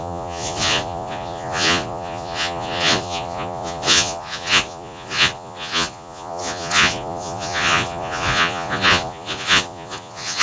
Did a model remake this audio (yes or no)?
yes